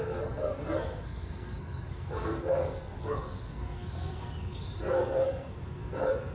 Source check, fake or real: fake